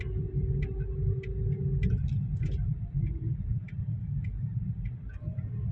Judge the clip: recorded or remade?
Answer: recorded